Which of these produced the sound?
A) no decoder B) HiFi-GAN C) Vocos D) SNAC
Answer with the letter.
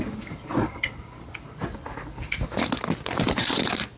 A